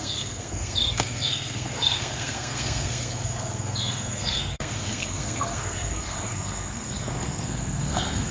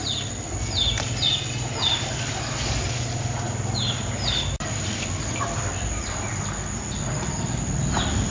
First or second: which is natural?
second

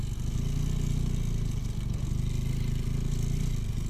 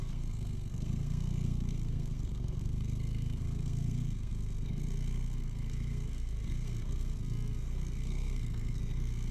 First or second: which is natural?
first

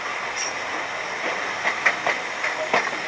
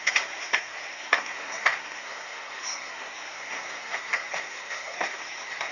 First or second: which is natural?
first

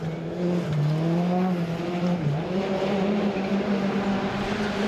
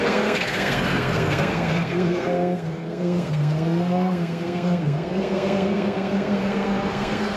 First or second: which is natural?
first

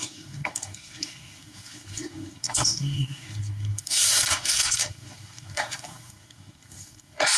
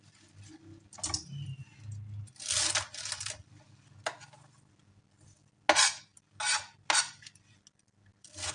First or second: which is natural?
second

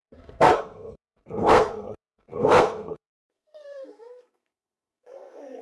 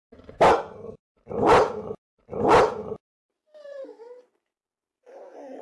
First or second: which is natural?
second